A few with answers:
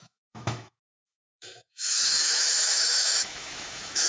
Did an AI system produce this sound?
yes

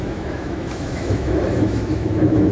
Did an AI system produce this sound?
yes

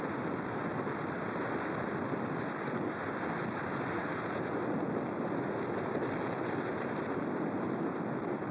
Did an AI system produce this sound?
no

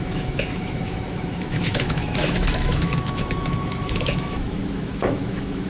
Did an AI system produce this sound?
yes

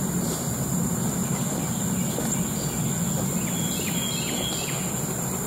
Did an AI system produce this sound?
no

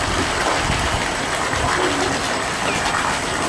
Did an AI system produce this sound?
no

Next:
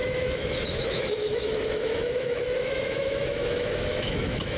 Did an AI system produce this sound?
yes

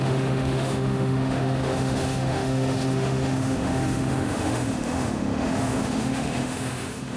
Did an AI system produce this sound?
yes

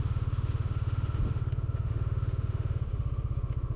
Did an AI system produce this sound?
yes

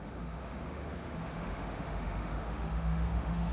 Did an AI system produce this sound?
yes